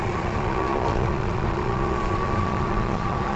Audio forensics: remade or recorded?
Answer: remade